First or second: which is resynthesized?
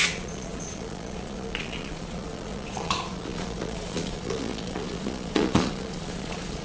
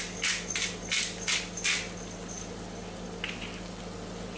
first